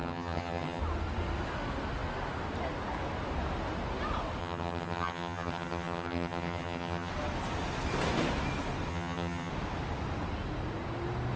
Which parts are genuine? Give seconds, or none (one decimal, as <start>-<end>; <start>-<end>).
0.8-4.4; 7.1-8.9; 9.5-11.4